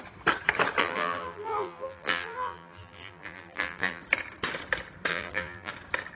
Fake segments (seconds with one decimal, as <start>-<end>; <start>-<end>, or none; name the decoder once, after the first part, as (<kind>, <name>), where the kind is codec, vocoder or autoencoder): 0.8-4.0 (vocoder, BigVGAN v2); 5.1-5.7